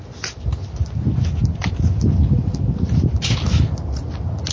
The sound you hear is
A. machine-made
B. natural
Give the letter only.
B